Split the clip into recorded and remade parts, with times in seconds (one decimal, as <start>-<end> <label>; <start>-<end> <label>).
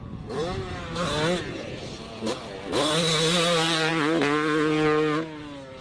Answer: 0.0-5.8 recorded